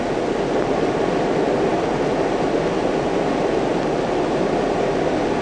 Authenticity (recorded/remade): recorded